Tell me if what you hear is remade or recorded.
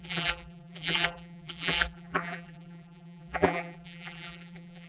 remade